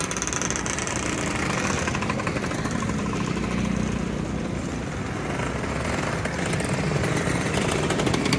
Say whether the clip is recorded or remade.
recorded